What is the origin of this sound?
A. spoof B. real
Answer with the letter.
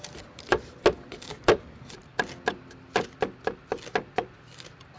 B